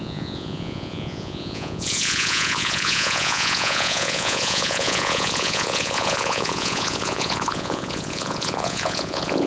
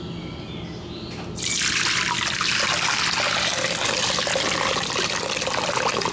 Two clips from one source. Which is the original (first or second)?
second